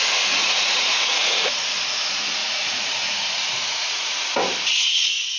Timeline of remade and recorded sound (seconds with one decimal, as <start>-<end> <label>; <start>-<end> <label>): 0.0-0.4 recorded; 0.4-1.7 remade; 1.7-2.4 recorded; 2.4-4.2 remade; 4.2-5.4 recorded